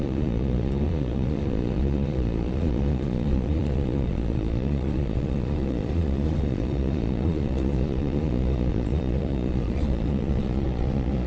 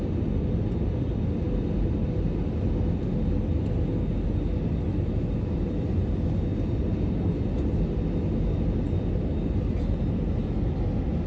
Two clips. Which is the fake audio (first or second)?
first